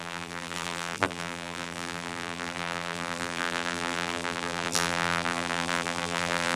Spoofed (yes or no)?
yes